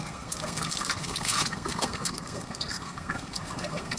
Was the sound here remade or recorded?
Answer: remade